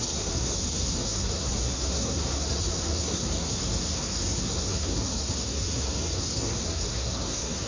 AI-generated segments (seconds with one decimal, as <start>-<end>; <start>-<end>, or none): 0.0-7.7